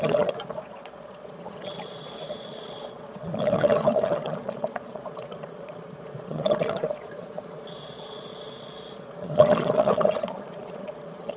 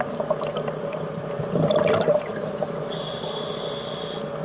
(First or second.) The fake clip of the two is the first